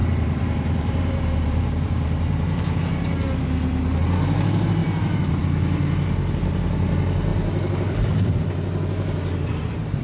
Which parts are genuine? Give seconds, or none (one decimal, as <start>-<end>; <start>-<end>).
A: 2.8-4.8; 5.4-7.3; 8.4-10.0